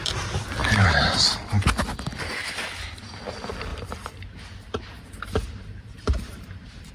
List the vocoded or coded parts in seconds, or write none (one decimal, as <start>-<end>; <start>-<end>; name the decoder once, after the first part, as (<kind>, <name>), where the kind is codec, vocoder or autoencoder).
0.6-1.5 (vocoder, BigVGAN v2); 3.7-6.9

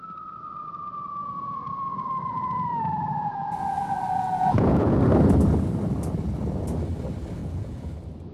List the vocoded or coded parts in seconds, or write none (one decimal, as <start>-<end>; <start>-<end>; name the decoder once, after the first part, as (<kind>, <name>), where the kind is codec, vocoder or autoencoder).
1.2-5.0 (vocoder, Vocos); 7.4-7.9

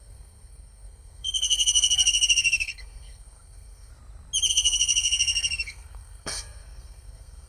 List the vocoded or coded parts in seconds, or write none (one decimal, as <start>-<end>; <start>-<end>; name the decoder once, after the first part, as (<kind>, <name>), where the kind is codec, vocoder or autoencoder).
0.0-3.9 (codec, SNAC); 4.5-7.5

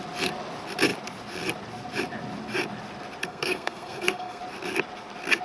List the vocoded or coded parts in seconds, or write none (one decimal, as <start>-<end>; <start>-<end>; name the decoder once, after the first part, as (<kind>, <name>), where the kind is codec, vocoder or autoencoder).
3.2-4.4 (codec, SNAC)

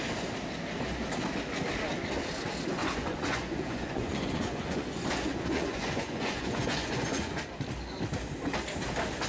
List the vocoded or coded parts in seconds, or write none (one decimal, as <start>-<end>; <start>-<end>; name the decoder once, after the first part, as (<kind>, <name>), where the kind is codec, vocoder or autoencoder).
2.8-7.4 (vocoder, Vocos)

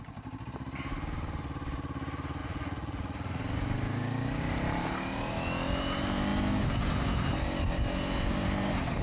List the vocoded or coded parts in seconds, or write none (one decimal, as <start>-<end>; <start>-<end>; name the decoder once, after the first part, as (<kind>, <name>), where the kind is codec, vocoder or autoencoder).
2.4-3.4 (vocoder, Vocos)